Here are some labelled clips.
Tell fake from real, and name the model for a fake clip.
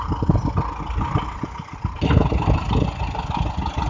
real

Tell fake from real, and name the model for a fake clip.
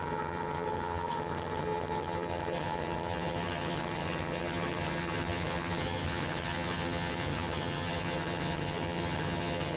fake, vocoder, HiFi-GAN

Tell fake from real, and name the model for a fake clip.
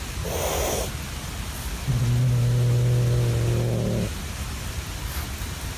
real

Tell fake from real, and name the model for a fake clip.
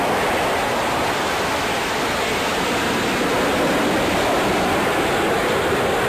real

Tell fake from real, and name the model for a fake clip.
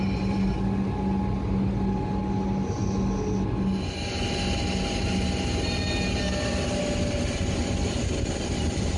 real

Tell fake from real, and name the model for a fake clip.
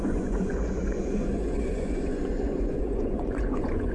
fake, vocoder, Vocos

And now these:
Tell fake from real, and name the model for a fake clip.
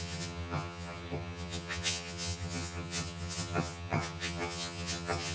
fake, vocoder, HiFi-GAN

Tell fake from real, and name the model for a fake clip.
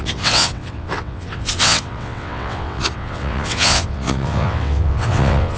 fake, vocoder, WaveNeXt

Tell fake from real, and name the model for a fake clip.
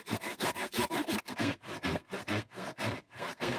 fake, codec, SNAC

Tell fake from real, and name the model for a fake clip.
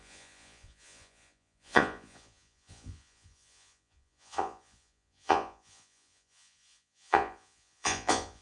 fake, vocoder, Vocos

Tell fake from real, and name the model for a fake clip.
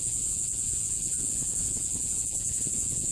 fake, vocoder, Vocos